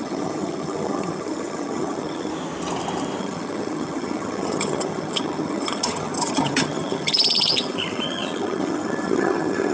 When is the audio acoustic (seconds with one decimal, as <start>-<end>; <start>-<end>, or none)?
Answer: 2.3-3.2